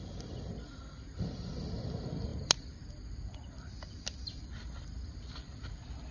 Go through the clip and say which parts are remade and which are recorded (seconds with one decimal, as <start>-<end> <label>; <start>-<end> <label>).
0.0-6.1 recorded